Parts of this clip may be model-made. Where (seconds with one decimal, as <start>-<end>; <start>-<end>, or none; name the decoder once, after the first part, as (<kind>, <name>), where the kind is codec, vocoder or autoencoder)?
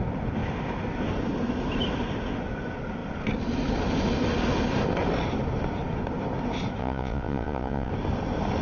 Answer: 6.8-7.9 (vocoder, Vocos)